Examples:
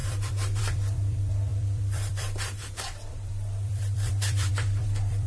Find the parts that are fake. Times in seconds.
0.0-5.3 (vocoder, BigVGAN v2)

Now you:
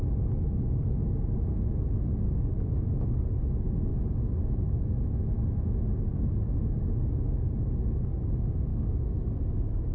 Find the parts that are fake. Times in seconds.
3.9-5.2 (autoencoder, DAC-VAE); 8.7-9.3

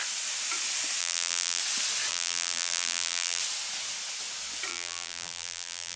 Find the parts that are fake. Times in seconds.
1.0-1.6 (vocoder, BigVGAN v2); 2.1-3.4; 4.7-6.0